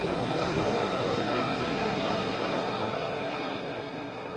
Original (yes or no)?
no